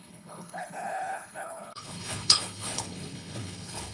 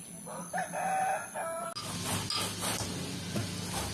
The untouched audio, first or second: second